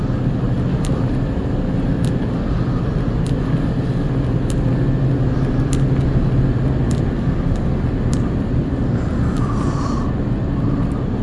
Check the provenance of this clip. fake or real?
real